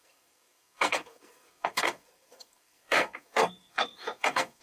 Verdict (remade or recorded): remade